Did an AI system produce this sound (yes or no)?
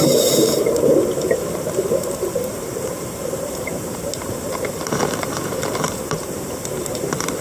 yes